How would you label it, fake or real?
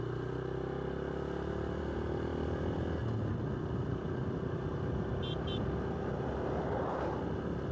real